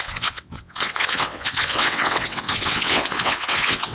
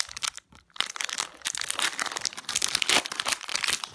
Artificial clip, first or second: first